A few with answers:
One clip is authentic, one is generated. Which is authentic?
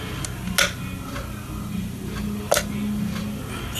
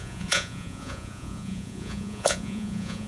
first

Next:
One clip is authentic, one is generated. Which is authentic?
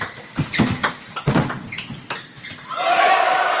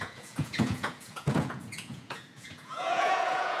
first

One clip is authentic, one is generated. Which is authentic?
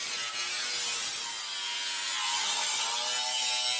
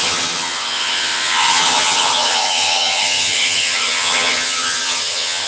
first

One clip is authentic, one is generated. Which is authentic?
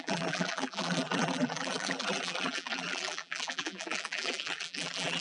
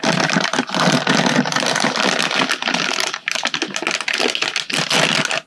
second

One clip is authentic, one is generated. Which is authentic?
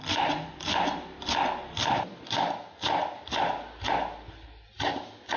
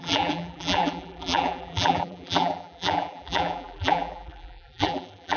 first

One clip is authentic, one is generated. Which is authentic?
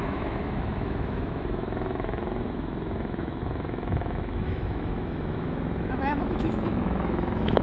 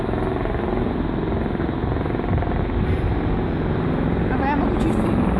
second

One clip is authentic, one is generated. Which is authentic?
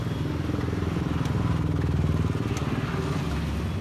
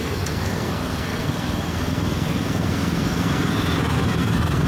first